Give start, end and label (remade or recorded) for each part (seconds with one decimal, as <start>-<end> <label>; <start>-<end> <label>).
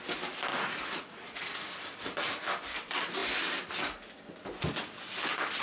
0.0-0.5 recorded; 0.5-1.8 remade; 1.8-5.6 recorded